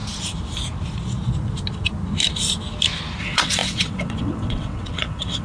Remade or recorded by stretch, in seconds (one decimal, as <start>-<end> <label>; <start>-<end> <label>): 0.0-3.2 recorded; 3.2-5.4 remade